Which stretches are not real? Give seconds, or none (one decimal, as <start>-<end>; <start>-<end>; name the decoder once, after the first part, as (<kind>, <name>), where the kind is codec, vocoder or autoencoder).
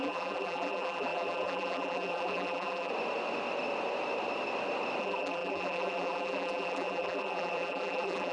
0.0-2.9 (vocoder, BigVGAN v2); 5.0-8.3